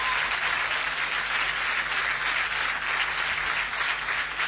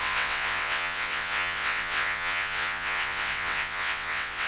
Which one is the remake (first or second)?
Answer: second